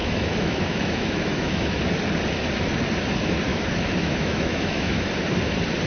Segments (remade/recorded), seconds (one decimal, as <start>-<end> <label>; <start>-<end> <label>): 0.0-1.8 remade; 1.8-3.5 recorded; 3.5-5.0 remade; 5.0-5.9 recorded